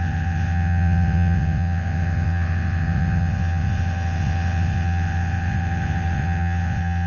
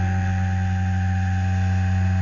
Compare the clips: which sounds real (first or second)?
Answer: second